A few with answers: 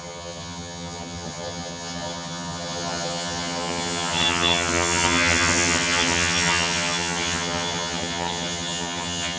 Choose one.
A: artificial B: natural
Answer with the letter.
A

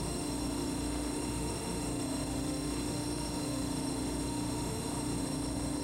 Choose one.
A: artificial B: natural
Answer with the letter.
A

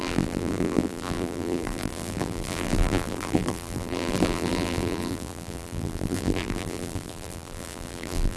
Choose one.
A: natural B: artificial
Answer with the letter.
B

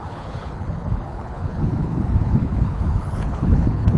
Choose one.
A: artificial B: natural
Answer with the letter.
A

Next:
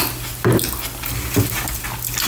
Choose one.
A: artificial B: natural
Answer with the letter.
B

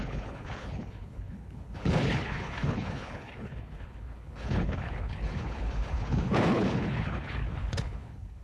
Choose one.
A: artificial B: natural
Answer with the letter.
A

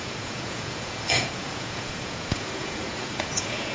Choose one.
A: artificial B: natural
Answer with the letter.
A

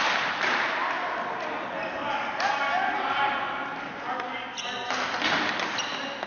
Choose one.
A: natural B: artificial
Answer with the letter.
A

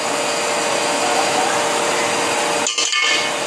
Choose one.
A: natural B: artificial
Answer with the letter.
A